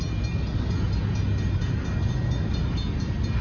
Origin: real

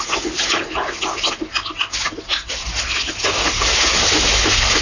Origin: real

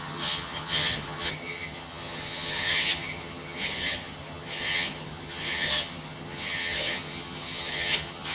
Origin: fake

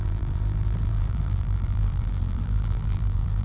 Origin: fake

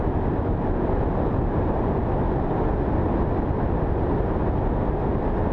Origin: real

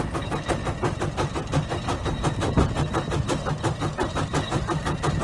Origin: real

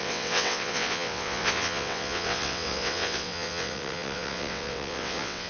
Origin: fake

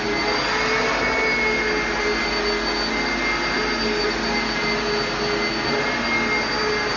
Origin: real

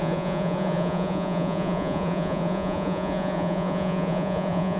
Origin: fake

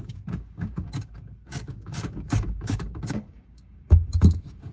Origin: fake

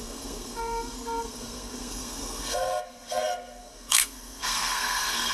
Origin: fake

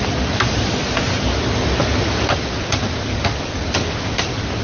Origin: real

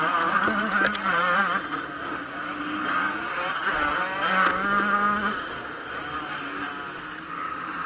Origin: real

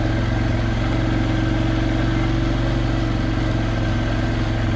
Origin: real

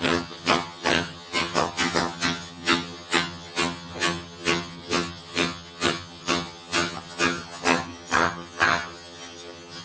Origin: fake